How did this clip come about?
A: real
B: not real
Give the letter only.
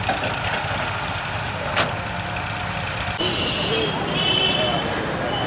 A